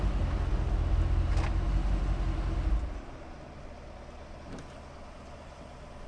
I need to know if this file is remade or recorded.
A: recorded